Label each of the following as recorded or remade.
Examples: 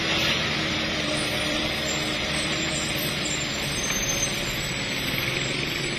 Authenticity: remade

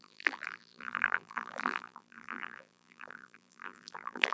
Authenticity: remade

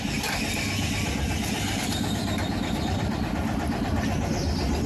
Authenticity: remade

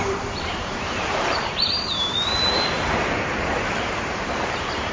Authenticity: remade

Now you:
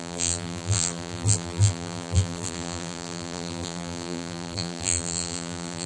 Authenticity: remade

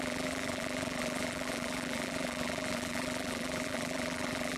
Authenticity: remade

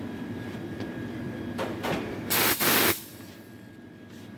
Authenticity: remade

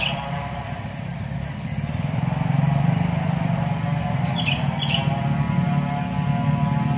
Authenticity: remade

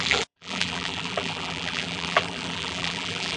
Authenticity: remade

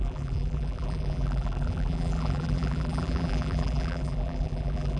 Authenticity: remade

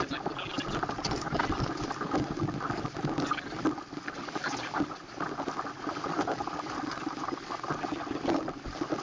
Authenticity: recorded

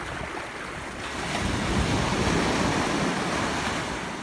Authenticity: recorded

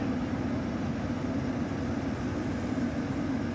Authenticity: recorded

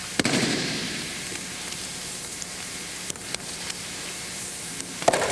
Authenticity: remade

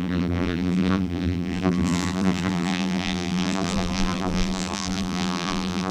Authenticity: remade